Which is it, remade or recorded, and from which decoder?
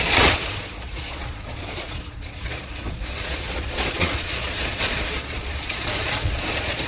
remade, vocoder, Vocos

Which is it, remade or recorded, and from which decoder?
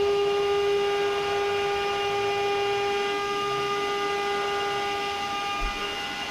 recorded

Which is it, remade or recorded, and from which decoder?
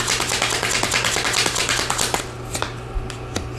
recorded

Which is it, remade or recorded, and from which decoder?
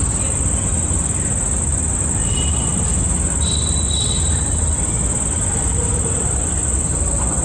recorded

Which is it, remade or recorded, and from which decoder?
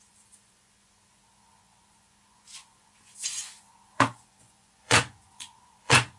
remade, vocoder, Vocos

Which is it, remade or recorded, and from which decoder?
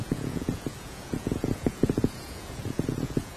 remade, vocoder, Vocos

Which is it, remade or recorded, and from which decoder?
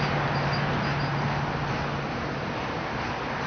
recorded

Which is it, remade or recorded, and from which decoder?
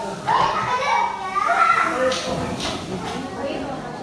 recorded